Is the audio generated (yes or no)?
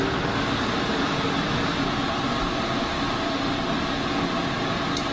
no